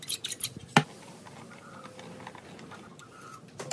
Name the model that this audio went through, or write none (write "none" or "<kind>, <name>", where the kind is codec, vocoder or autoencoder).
none